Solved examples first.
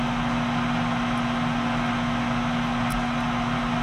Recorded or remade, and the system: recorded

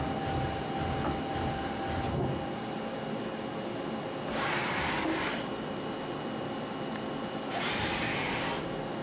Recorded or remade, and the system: recorded